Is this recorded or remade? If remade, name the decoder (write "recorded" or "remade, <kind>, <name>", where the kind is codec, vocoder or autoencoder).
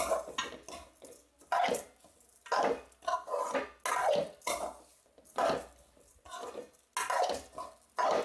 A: recorded